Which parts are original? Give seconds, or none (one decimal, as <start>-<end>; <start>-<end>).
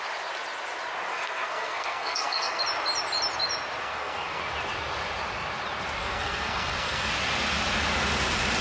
0.0-1.1; 2.6-3.8; 4.4-6.0; 7.1-8.6